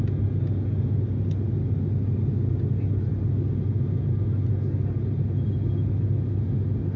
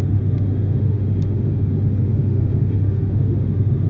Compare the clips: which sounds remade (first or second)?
second